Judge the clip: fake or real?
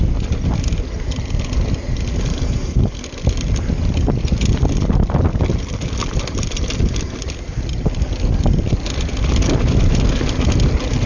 real